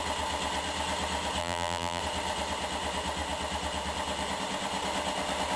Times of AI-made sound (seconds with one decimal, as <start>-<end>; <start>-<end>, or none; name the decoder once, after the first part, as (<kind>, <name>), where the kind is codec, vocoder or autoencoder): 1.4-2.0 (vocoder, BigVGAN v2)